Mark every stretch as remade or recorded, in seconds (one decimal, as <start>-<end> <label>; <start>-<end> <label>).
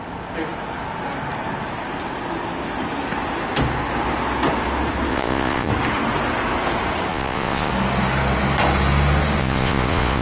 0.0-5.1 recorded; 5.1-5.7 remade; 5.7-7.1 recorded; 7.1-7.7 remade; 7.7-9.4 recorded; 9.4-10.2 remade